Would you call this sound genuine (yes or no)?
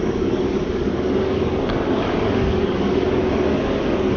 no